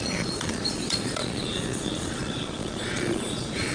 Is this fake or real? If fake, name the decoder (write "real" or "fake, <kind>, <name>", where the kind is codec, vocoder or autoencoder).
fake, vocoder, Vocos